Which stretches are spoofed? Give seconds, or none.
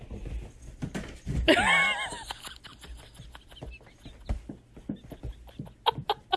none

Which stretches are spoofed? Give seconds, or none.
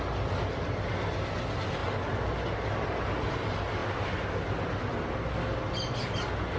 none